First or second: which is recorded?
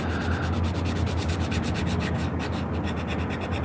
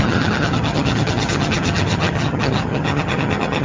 first